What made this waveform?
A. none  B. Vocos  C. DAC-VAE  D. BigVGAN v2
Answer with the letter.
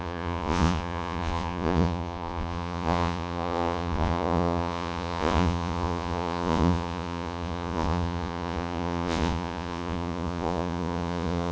B